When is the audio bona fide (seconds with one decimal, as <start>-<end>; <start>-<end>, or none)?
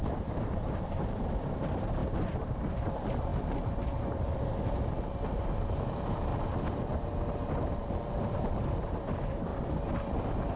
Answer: 6.3-8.4; 9.5-10.6